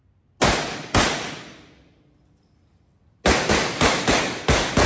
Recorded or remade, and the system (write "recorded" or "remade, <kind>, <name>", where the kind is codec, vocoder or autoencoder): recorded